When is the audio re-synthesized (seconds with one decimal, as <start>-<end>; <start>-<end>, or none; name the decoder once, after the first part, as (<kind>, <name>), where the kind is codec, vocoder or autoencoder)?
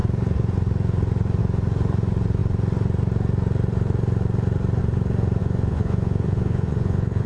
5.4-7.3 (vocoder, Vocos)